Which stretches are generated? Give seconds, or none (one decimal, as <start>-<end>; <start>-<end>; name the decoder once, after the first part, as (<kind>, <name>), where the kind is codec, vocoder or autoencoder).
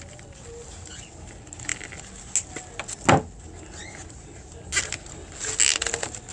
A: none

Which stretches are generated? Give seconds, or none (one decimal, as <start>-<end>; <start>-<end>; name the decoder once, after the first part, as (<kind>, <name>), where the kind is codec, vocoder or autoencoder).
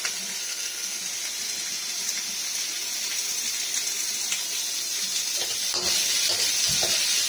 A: 0.4-1.0 (codec, SNAC)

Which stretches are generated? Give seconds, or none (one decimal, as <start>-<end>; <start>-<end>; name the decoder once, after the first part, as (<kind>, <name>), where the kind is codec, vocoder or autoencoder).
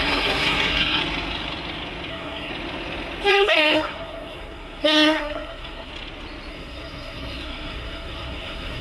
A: 0.0-1.0 (codec, SNAC); 2.1-2.5; 3.3-5.9; 6.5-8.8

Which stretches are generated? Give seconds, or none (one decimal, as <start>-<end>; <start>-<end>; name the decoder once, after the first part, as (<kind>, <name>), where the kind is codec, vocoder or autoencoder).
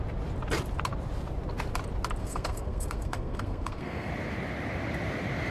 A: 2.2-4.1 (codec, SNAC)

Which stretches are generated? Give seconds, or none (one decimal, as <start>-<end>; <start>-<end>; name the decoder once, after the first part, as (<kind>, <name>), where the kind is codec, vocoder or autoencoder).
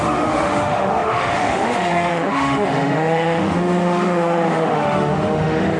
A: 0.0-5.8 (autoencoder, DAC-VAE)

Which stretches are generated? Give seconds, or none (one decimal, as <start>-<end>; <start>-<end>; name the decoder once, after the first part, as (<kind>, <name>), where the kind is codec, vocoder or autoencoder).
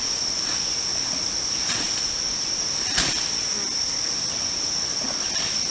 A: 0.0-0.9 (vocoder, BigVGAN v2); 4.3-5.7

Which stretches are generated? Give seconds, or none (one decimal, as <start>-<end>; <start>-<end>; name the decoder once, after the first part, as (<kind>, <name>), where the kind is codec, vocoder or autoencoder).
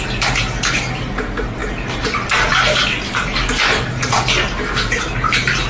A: none